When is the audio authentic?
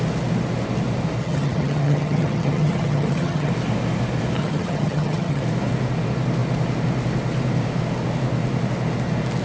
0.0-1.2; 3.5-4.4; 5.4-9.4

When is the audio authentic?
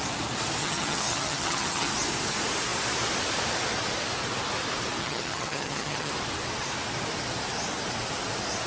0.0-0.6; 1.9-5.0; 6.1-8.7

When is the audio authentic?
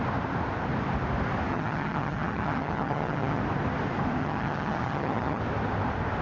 0.0-1.5; 3.4-4.2; 5.4-6.2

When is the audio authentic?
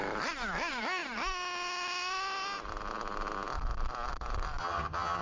0.0-4.6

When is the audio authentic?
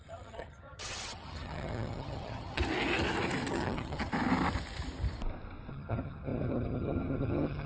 2.6-3.5; 4.1-5.7